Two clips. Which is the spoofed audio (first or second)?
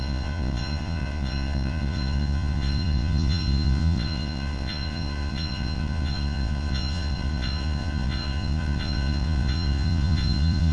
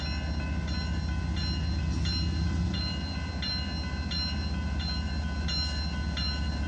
first